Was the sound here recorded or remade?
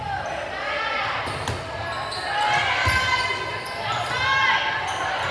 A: recorded